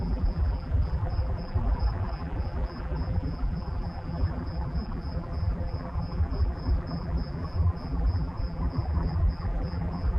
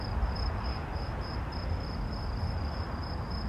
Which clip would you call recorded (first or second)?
second